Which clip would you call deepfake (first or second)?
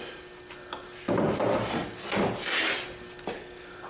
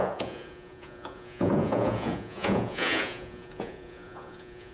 second